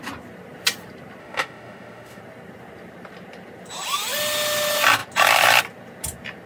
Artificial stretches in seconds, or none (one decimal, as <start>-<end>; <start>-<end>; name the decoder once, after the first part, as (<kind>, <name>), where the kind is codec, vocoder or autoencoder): 1.2-2.2 (autoencoder, DAC-VAE)